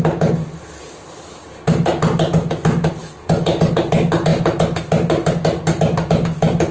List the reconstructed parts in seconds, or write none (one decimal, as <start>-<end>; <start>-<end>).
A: 3.0-3.7